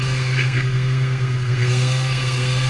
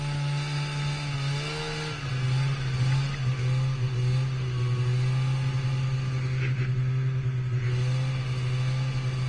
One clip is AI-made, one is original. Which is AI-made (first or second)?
first